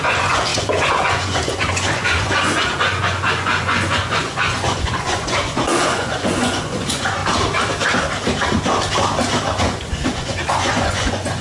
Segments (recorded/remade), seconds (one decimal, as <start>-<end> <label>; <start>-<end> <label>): 0.0-7.2 remade; 7.2-9.6 recorded; 9.6-11.4 remade